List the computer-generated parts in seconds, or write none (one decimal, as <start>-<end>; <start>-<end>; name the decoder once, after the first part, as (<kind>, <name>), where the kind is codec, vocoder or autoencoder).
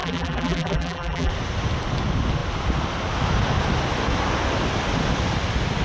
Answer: 0.0-1.3 (vocoder, BigVGAN v2)